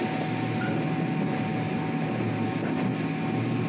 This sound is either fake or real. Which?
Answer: real